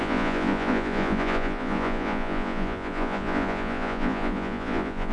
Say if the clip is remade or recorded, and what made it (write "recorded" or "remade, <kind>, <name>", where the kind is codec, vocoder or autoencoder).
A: remade, vocoder, Vocos